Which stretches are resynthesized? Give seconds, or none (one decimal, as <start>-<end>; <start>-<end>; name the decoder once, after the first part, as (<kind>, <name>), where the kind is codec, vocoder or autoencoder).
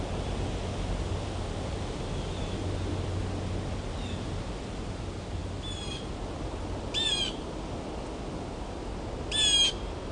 none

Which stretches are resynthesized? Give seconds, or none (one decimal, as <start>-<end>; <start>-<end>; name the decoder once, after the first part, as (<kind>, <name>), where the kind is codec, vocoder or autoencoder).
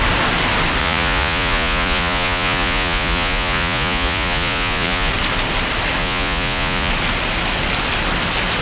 0.8-5.1 (vocoder, Vocos); 6.0-6.9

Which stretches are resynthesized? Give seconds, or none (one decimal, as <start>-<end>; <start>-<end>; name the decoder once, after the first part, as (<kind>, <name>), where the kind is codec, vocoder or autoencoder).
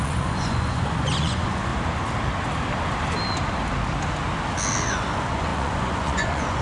0.0-1.7 (vocoder, Vocos); 4.9-6.6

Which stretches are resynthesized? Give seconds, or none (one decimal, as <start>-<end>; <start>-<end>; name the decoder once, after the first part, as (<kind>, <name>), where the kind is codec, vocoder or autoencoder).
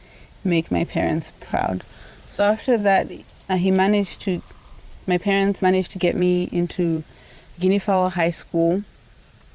0.0-2.8 (vocoder, Vocos); 5.6-9.5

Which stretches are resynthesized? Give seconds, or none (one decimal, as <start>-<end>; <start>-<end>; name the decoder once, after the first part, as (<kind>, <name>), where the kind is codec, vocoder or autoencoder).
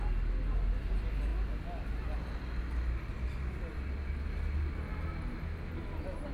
none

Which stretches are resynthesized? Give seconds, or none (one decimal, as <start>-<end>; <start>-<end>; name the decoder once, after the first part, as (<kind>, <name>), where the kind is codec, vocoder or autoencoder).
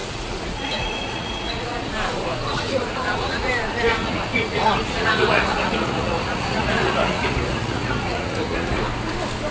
0.0-1.9 (vocoder, Vocos); 2.5-3.5; 3.9-8.8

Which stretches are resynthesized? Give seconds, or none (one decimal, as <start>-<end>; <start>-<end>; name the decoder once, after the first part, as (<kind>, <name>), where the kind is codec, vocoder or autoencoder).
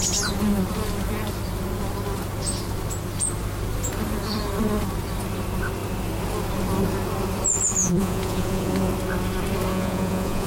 7.8-8.9 (vocoder, Vocos); 9.7-10.5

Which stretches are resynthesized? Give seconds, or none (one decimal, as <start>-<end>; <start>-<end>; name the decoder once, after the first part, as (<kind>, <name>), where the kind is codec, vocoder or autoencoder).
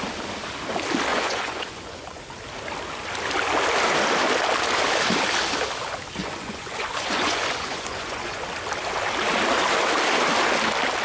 1.1-2.2 (vocoder, Vocos); 6.2-8.4